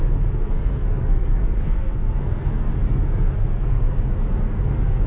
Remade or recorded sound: remade